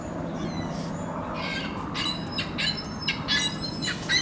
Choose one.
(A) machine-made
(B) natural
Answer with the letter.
B